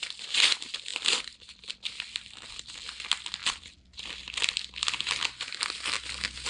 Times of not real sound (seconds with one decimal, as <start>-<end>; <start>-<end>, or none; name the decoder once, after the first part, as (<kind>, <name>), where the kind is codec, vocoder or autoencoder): none